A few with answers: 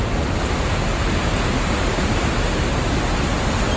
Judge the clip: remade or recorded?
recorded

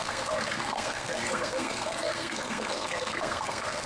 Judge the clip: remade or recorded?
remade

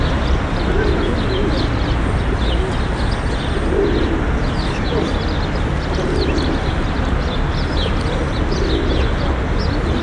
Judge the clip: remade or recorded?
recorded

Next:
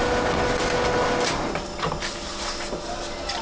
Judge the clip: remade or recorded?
recorded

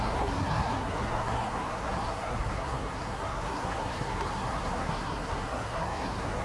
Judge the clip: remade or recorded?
remade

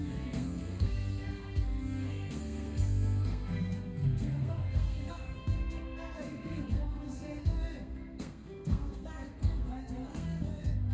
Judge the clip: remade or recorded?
remade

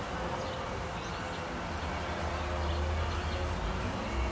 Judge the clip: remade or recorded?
recorded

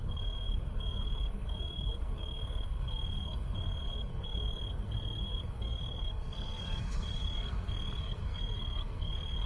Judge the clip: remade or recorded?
remade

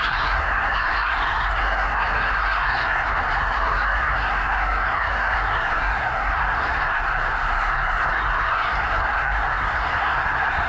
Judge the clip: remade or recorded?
remade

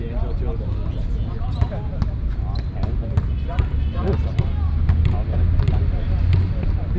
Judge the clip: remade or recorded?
recorded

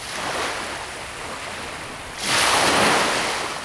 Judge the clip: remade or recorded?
recorded